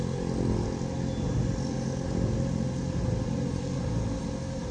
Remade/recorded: recorded